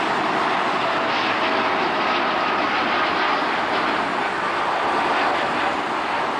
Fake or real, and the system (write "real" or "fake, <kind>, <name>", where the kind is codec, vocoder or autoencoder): real